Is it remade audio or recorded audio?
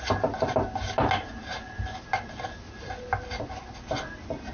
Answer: recorded